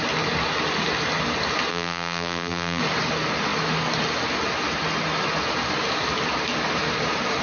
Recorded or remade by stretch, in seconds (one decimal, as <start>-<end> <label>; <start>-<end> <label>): 0.0-1.7 recorded; 1.7-2.8 remade; 2.8-7.4 recorded